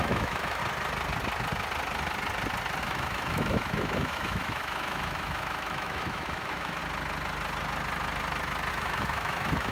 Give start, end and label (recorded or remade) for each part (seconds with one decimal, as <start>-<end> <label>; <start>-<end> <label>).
0.0-0.6 remade; 0.6-2.8 recorded; 2.8-6.8 remade; 6.8-8.7 recorded; 8.7-9.7 remade